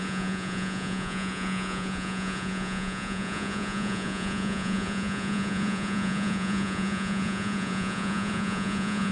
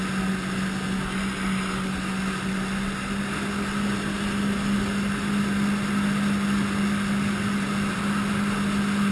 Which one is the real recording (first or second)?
second